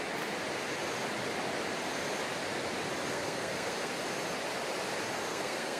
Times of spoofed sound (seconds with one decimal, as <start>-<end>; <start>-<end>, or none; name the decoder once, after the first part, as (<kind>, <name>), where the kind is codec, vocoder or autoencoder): 3.1-3.9 (codec, SNAC); 5.3-5.8